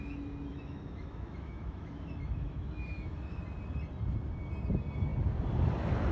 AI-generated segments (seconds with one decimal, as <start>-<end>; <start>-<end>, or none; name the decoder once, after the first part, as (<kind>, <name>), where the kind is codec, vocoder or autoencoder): 0.5-3.4 (autoencoder, DAC-VAE)